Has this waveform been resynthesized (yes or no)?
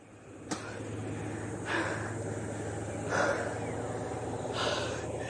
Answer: no